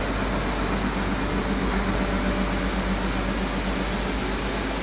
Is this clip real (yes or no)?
yes